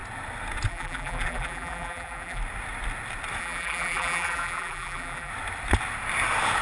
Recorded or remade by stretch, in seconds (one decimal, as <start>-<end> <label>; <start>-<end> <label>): 0.0-0.7 recorded; 0.7-2.4 remade; 2.4-3.4 recorded; 3.4-5.3 remade; 5.3-6.6 recorded